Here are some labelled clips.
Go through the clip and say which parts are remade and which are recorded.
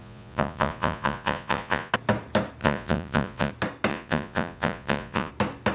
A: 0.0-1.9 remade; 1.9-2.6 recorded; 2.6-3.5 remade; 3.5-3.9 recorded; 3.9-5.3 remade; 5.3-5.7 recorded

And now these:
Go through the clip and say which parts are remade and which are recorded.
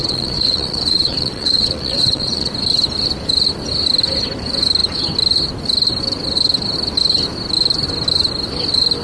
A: 0.0-2.5 remade; 2.5-9.0 recorded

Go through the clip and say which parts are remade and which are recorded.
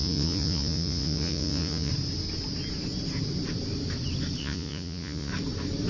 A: 0.0-1.9 remade; 1.9-4.4 recorded; 4.4-5.3 remade; 5.3-5.9 recorded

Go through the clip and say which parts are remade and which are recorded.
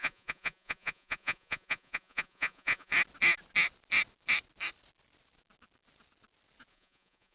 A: 0.0-2.9 remade; 2.9-6.7 recorded; 6.7-7.3 remade